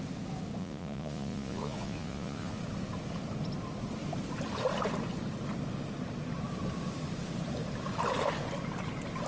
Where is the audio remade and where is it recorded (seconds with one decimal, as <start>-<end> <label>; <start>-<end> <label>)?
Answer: 0.0-0.6 recorded; 0.6-2.6 remade; 2.6-9.3 recorded